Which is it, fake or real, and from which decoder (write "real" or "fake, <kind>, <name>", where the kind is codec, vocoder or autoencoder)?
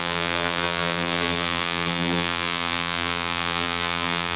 fake, vocoder, BigVGAN v2